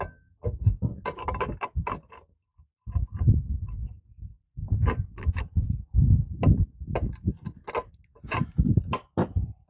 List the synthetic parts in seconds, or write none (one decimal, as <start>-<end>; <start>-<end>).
4.6-5.4